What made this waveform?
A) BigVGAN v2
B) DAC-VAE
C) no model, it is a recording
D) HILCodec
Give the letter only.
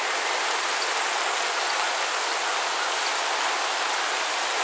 C